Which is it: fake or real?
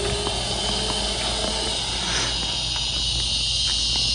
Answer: real